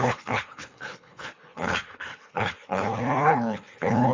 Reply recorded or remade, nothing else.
remade